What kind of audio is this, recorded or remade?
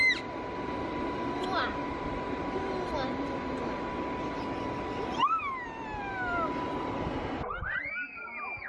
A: recorded